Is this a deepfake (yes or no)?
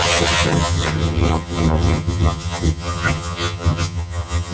yes